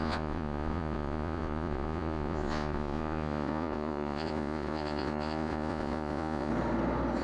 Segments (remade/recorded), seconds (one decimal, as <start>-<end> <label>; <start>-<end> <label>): 0.0-6.5 remade; 6.5-7.2 recorded